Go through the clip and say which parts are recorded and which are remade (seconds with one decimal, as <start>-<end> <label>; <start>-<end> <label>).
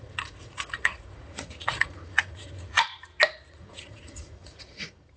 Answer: 0.0-2.9 remade; 2.9-3.5 recorded; 3.5-5.2 remade